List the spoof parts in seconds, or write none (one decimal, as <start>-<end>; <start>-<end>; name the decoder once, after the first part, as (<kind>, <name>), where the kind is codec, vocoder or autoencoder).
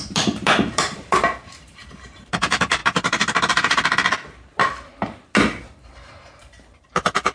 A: 0.0-2.8 (vocoder, BigVGAN v2); 5.9-7.3